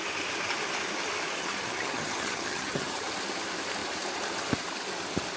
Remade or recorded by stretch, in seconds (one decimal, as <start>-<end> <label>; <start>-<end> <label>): 0.0-1.4 recorded; 1.4-3.1 remade; 3.1-5.4 recorded

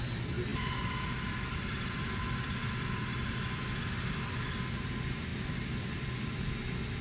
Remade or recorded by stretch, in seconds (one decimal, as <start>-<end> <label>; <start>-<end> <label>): 0.0-7.0 recorded

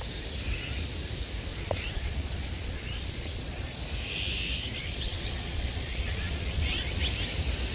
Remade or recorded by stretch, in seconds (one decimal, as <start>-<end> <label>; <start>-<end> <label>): 0.0-1.5 recorded; 1.5-3.8 remade; 3.8-4.8 recorded; 4.8-7.0 remade; 7.0-7.7 recorded

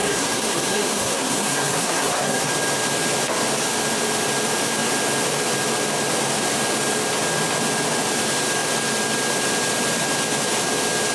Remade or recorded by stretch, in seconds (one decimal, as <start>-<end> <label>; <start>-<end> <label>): 0.0-2.5 remade; 2.5-11.1 recorded

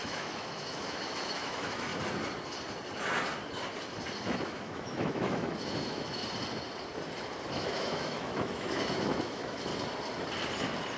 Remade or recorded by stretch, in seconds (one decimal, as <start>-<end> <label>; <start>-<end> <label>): 0.0-1.9 remade; 1.9-4.2 recorded; 4.2-6.2 remade; 6.2-7.5 recorded; 7.5-9.7 remade; 9.7-11.0 recorded